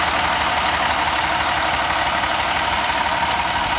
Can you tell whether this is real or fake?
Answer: real